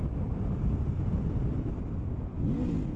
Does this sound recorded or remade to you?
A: recorded